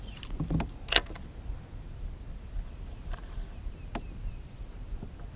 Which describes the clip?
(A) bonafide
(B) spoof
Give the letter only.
A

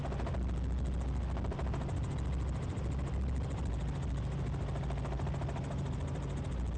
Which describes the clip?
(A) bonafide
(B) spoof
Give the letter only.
A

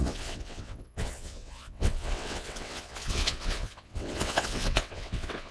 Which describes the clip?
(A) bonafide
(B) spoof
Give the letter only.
B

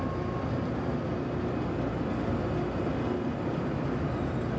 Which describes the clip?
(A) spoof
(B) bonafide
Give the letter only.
B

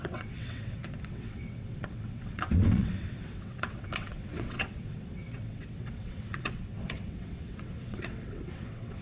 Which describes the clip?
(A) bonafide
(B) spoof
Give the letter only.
B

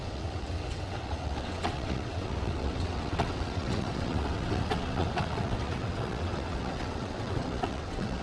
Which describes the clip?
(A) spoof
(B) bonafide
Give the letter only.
A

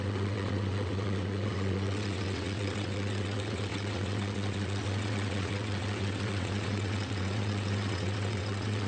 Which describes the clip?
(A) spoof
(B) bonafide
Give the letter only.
A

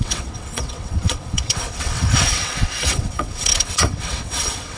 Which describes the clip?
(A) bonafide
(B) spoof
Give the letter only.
B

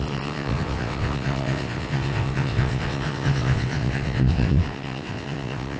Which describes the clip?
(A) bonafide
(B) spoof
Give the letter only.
B